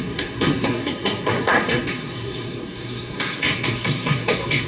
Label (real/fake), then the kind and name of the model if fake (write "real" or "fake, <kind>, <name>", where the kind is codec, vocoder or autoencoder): fake, codec, SNAC